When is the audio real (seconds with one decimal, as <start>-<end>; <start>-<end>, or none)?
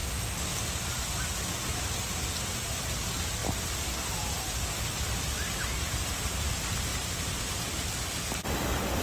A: 0.0-6.9; 7.6-9.0